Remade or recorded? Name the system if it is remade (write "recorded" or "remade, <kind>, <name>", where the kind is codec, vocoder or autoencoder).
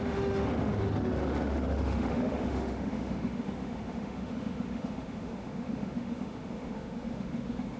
remade, autoencoder, DAC-VAE